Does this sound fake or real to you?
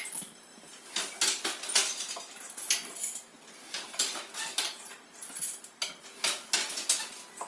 real